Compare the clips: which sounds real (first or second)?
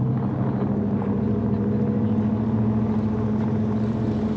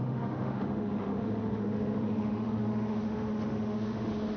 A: first